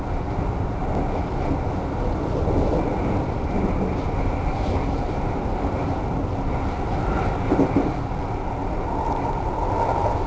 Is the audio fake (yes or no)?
no